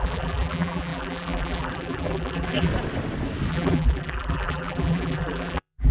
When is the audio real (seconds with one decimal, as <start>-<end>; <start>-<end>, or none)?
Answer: 2.7-3.5